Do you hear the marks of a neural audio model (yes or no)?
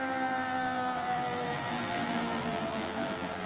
yes